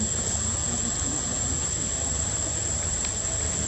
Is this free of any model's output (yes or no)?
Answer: yes